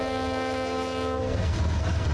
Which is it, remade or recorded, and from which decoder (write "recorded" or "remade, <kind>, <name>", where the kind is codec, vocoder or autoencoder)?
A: remade, codec, SNAC